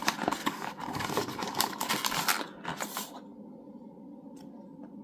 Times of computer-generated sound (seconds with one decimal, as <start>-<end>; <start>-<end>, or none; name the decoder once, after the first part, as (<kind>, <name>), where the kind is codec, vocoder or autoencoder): 0.4-1.9 (codec, DAC)

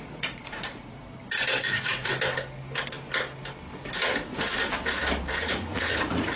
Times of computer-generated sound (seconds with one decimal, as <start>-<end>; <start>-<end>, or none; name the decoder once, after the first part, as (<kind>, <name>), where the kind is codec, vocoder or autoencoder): 0.0-1.0 (vocoder, Vocos); 1.6-2.1; 5.4-6.4

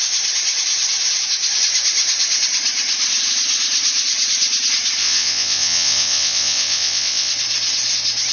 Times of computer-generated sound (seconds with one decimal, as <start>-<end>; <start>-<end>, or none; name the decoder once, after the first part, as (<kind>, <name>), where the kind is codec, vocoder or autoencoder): 5.0-7.3 (vocoder, WaveNeXt)

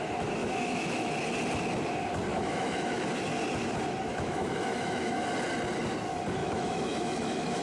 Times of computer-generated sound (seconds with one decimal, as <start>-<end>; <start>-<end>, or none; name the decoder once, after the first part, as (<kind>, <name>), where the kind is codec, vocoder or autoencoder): 0.4-1.1 (autoencoder, DAC-VAE); 2.3-3.1; 4.1-5.3; 6.4-7.6

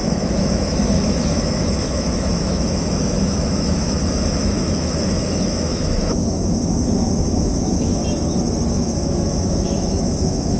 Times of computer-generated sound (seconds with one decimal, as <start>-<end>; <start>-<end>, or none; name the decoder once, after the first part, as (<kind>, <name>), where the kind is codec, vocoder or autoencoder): 0.0-8.0 (autoencoder, DAC-VAE); 8.7-10.6

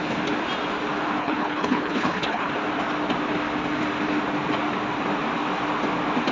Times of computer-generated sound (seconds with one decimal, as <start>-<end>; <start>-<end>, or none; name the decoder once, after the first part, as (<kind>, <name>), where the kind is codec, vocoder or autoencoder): 1.2-2.5 (codec, HILCodec)

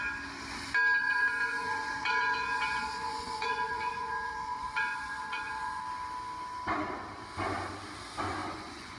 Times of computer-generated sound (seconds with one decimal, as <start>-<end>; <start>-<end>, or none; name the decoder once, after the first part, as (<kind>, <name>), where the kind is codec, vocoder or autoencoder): 1.0-5.8 (vocoder, Vocos); 8.4-9.0

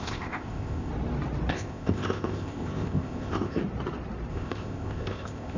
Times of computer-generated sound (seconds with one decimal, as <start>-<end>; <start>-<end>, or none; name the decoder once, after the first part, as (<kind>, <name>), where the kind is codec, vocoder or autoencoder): 0.0-0.9 (codec, ZipCodec); 1.5-3.6; 4.3-5.6